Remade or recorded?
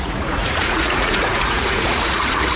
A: remade